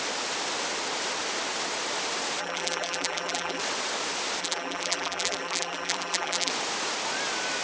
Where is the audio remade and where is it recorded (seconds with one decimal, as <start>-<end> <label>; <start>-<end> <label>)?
0.0-2.4 recorded; 2.4-3.6 remade; 3.6-4.4 recorded; 4.4-6.5 remade; 6.5-7.6 recorded